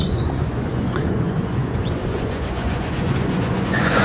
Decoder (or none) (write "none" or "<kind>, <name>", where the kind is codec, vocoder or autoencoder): vocoder, Vocos